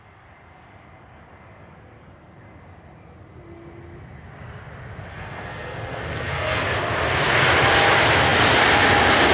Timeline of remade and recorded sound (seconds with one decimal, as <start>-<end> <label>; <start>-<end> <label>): 0.0-5.1 recorded; 5.1-6.6 remade; 6.6-9.3 recorded